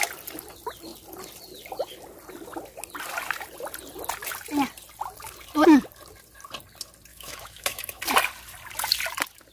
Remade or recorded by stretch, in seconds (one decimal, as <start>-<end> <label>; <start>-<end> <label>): 0.0-7.1 recorded; 7.1-8.0 remade; 8.0-9.5 recorded